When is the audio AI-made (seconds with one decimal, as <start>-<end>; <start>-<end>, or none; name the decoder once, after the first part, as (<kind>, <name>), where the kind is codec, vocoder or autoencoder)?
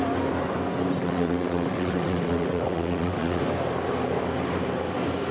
1.0-3.4 (vocoder, WaveNeXt)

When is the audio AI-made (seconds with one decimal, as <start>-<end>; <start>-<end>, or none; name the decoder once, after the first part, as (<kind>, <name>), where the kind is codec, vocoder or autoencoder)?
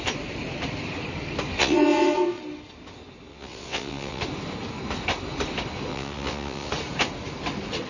1.6-2.4 (vocoder, WaveNeXt); 3.3-4.2; 5.9-6.7